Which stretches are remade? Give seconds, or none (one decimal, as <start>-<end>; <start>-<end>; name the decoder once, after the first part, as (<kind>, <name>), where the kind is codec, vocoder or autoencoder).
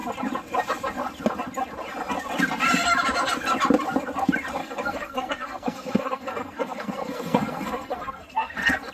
4.6-8.9 (codec, SNAC)